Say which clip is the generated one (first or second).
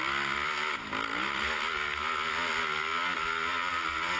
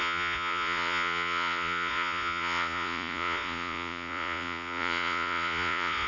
second